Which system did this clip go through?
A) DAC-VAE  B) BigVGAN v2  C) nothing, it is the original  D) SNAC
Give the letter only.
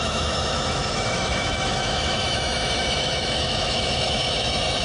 A